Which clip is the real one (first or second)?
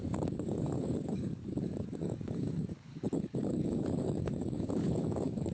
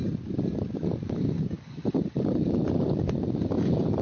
second